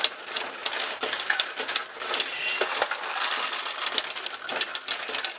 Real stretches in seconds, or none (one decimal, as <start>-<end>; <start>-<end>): 0.0-5.4